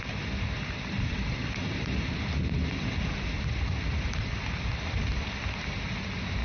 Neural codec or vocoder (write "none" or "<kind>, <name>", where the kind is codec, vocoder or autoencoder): none